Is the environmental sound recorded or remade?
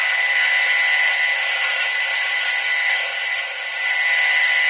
recorded